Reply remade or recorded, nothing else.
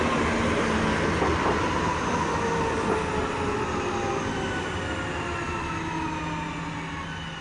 recorded